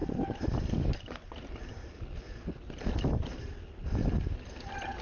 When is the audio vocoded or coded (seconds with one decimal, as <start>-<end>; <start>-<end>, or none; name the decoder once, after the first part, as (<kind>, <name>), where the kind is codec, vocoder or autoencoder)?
none